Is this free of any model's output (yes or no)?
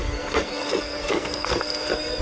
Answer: no